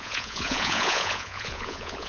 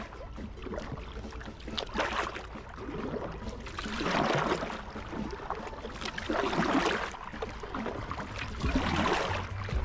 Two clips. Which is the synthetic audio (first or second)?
first